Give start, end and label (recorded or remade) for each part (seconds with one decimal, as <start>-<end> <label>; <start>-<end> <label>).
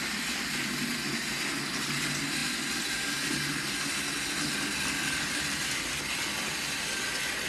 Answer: 0.0-7.5 recorded